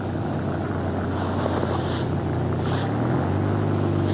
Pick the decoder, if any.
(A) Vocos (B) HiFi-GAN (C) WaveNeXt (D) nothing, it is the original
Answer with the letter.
D